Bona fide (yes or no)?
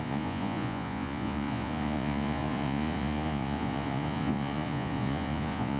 no